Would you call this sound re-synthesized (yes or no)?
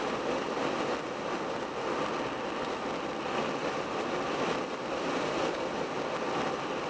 no